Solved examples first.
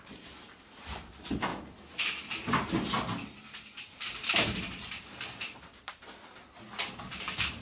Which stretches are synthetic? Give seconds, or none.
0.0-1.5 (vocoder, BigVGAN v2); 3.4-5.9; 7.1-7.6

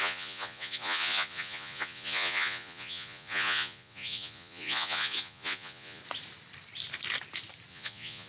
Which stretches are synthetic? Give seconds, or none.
0.0-6.0 (vocoder, Vocos); 7.7-8.3